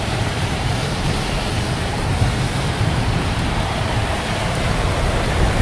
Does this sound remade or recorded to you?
remade